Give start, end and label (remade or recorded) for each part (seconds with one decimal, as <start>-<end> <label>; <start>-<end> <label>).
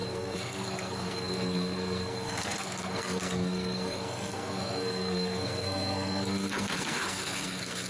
0.0-7.9 remade